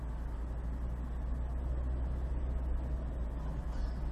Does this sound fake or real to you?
real